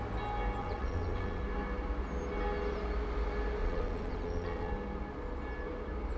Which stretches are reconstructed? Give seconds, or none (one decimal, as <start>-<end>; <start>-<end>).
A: 0.6-1.4; 3.6-4.7